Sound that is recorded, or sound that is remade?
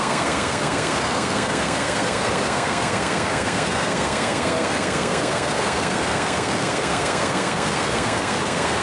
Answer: remade